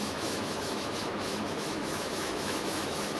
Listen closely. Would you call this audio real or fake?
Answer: fake